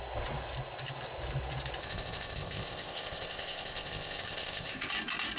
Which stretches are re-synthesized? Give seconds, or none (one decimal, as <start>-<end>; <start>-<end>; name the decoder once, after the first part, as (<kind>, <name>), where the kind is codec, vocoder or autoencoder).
1.8-4.9 (codec, ZipCodec)